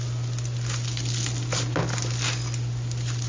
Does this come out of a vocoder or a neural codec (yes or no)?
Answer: no